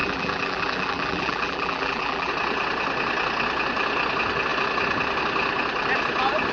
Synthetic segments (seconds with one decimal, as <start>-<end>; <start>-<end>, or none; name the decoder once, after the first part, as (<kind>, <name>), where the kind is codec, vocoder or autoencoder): 0.0-2.3 (vocoder, BigVGAN v2)